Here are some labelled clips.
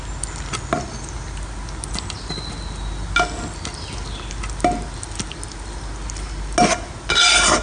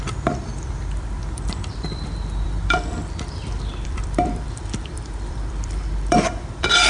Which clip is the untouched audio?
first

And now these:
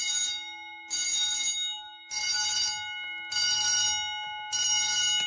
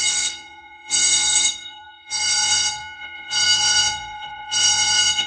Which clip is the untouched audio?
first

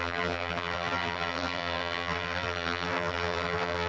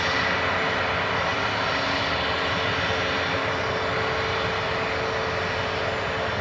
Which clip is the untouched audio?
second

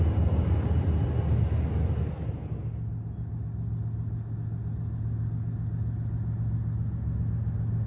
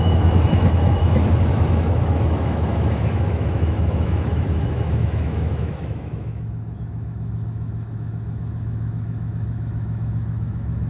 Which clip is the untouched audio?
first